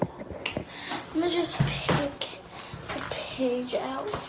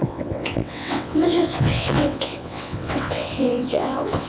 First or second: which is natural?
first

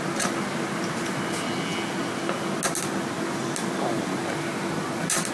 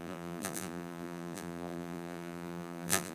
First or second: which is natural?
first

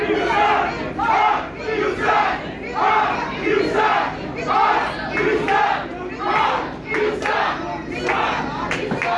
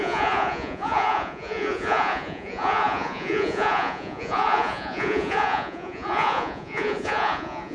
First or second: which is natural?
first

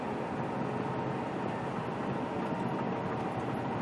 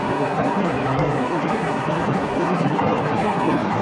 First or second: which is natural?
first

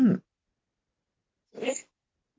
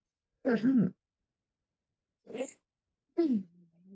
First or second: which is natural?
first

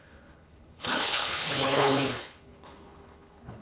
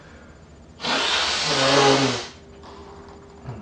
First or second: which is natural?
second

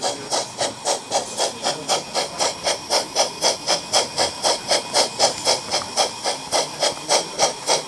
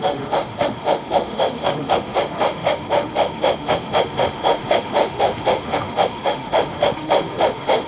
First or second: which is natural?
first